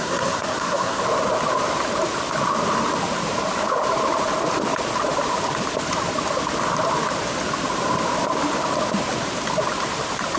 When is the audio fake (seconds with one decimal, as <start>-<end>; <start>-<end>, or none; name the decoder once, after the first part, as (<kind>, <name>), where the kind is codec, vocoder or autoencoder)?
0.0-1.0 (codec, SNAC)